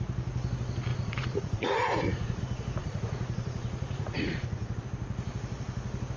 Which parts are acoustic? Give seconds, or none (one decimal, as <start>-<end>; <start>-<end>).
0.0-0.9; 2.4-2.8; 4.8-6.2